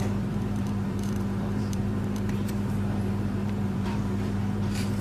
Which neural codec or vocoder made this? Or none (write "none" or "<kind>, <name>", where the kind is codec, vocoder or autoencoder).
vocoder, BigVGAN v2